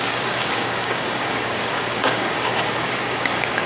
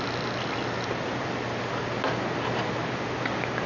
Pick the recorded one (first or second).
second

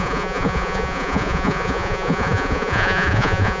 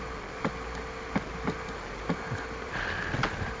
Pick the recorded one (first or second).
second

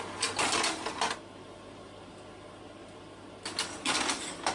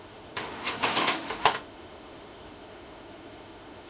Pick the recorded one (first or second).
first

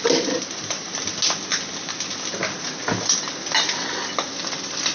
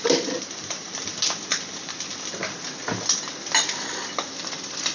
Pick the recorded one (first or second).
first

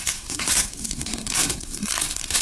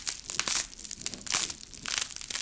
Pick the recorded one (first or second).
second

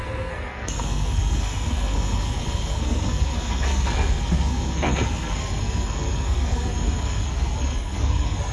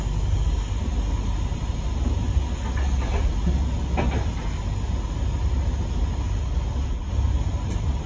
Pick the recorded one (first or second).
second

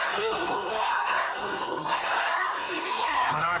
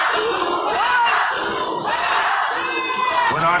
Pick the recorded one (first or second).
second